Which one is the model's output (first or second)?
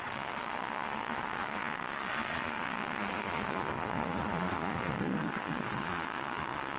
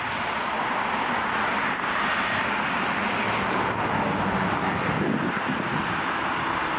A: first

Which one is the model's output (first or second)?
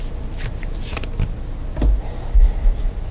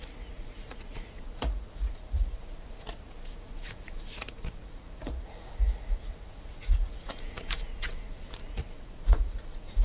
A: second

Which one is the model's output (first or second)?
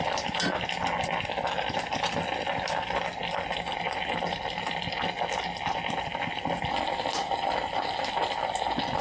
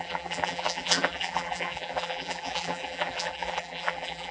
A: second